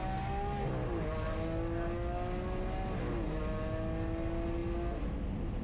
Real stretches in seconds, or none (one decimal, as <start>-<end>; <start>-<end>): 0.0-5.6